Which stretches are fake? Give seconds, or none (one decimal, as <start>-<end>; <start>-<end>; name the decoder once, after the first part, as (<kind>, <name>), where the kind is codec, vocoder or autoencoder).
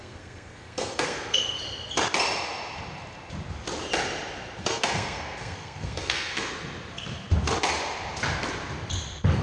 0.0-1.6 (codec, SNAC); 4.6-6.5